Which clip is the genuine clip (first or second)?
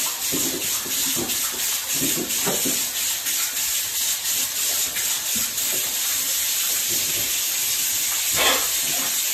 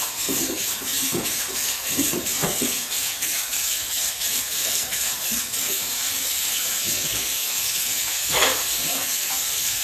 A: first